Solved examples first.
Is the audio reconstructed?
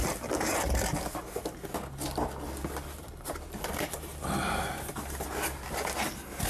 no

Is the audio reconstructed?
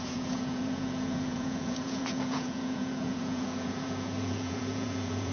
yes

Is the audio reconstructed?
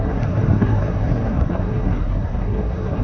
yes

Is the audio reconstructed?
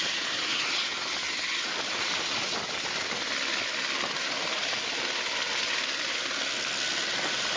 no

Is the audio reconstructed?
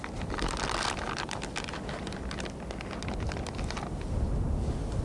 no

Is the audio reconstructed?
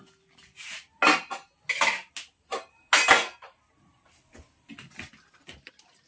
no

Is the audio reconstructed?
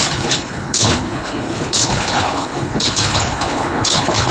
yes